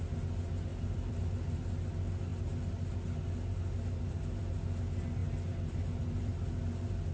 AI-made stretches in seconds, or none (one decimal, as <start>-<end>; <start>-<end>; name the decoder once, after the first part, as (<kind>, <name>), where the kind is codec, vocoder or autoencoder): 0.7-1.6 (vocoder, BigVGAN v2); 2.3-4.4; 5.2-7.1